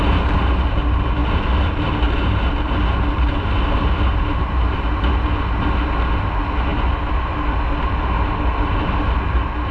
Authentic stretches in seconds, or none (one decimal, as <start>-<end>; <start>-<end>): 0.0-9.7